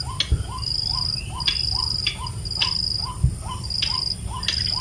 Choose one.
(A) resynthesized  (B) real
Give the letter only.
B